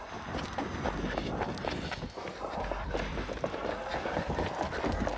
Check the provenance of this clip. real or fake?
real